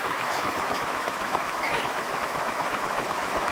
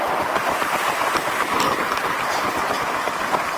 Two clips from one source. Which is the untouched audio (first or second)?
second